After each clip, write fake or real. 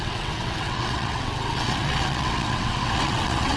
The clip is fake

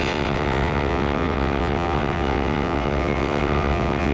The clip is fake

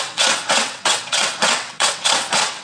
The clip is fake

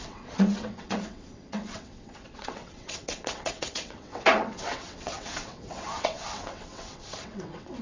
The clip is fake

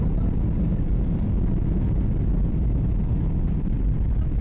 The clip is real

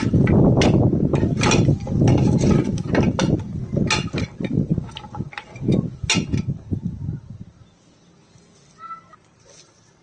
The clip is real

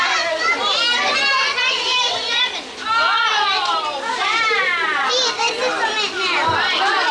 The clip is real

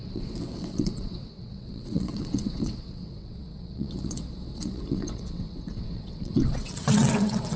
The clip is fake